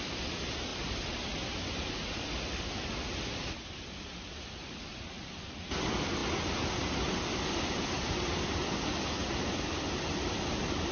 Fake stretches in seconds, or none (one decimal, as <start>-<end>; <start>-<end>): none